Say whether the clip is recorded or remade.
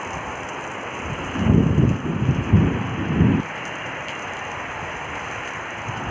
recorded